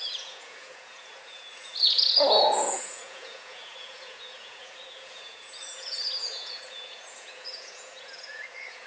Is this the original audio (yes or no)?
no